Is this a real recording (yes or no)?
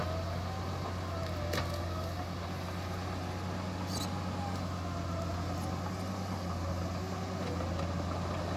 yes